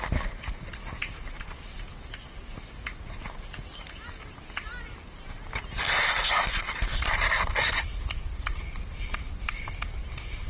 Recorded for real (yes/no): yes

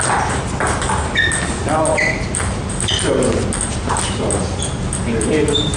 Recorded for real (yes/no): yes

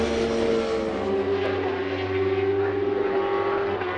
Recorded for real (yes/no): yes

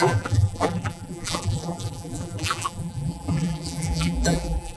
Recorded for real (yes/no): no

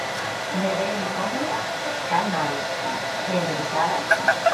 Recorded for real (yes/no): no